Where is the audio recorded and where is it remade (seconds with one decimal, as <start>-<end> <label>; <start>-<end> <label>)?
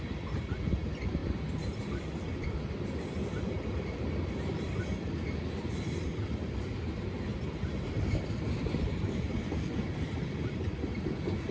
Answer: 0.0-1.2 remade; 1.2-1.9 recorded; 1.9-7.3 remade; 7.3-7.9 recorded; 7.9-11.5 remade